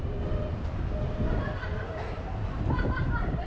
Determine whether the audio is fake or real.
fake